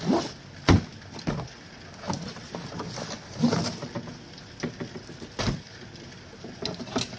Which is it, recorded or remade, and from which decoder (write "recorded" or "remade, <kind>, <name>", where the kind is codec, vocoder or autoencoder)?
recorded